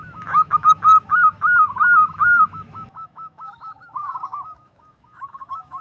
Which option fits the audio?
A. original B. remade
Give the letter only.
B